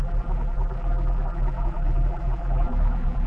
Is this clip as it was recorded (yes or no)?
no